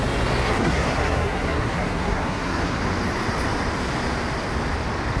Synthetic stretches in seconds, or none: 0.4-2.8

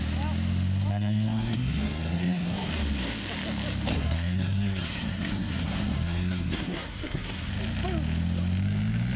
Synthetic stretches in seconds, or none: 0.9-2.7; 3.9-7.5

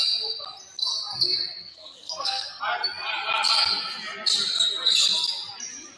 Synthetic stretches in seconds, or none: 1.7-2.6

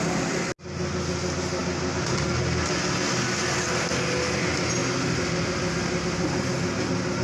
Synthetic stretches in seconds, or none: none

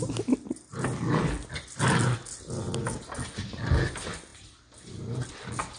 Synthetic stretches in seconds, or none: none

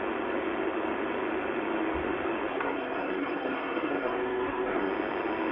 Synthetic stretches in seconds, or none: 2.5-4.9